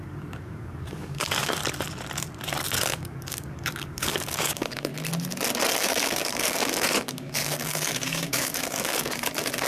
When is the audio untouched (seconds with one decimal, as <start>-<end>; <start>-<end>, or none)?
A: 1.6-2.7; 4.9-5.8